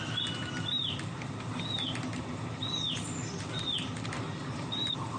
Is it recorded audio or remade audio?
recorded